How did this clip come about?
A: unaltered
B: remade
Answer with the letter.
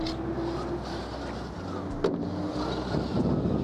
A